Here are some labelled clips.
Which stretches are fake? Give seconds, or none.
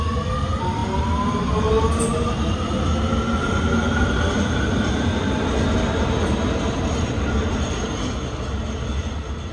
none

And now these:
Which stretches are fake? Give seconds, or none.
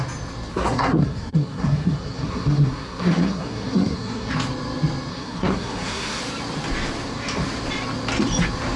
0.5-4.3 (codec, SNAC); 5.1-6.2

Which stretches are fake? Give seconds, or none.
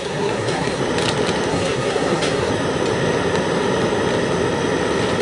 0.0-0.8 (codec, SNAC); 1.5-2.5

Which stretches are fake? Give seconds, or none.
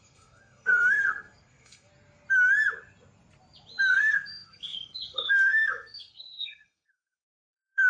0.0-1.9 (codec, SNAC); 3.9-7.9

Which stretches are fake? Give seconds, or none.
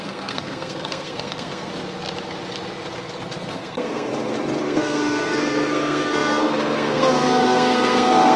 0.0-1.7 (codec, SNAC); 3.5-4.1; 4.6-8.4